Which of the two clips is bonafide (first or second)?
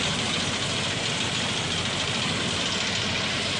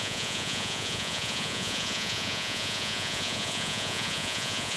first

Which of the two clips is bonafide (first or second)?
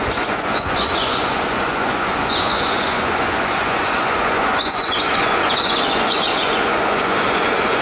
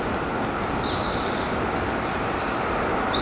second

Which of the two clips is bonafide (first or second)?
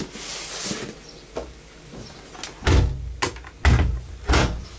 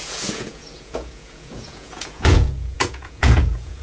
first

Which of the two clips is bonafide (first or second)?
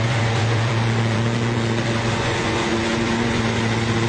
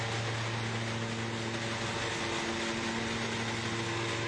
second